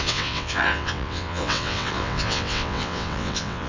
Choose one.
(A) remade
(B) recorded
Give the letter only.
A